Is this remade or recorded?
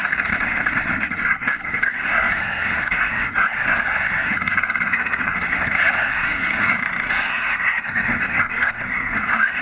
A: remade